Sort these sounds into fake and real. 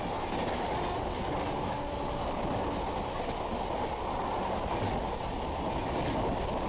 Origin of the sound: real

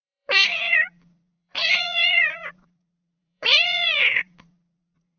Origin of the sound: fake